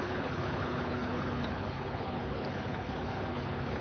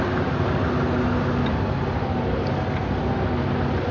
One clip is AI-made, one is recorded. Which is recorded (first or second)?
second